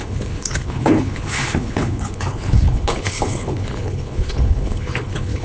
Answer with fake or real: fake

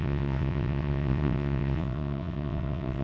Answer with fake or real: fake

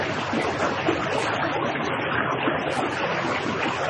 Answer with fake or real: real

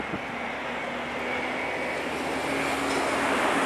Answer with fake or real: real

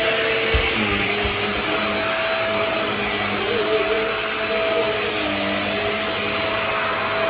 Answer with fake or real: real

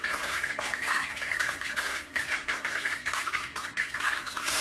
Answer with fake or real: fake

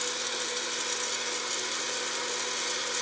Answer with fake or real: real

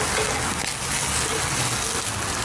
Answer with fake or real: real